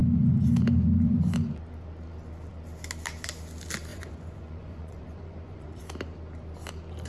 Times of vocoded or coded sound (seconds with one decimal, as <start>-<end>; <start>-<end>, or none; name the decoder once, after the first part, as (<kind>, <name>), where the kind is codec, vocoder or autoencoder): 3.9-5.8 (vocoder, Vocos)